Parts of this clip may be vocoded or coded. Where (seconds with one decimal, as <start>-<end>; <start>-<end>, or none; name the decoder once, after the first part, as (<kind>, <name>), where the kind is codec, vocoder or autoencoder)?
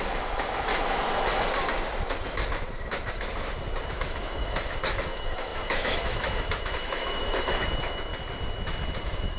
0.0-0.7 (autoencoder, DAC-VAE); 3.9-8.1; 9.0-9.4